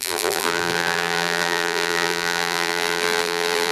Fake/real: fake